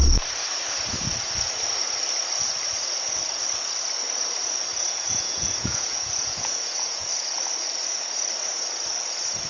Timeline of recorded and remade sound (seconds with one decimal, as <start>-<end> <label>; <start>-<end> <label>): 0.0-4.7 recorded; 4.7-7.1 remade; 7.1-9.5 recorded